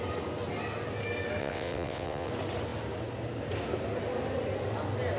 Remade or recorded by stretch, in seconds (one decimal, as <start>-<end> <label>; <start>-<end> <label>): 0.0-1.4 recorded; 1.4-2.3 remade; 2.3-5.2 recorded